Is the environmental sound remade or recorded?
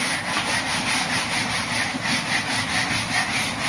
recorded